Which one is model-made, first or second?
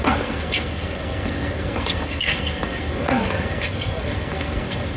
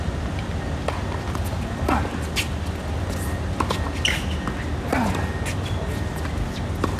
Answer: first